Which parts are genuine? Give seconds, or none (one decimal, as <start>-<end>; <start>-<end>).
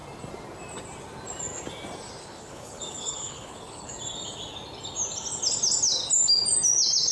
0.0-2.2; 3.9-7.1